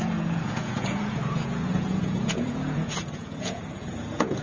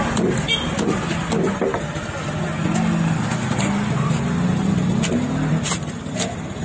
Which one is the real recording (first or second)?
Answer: second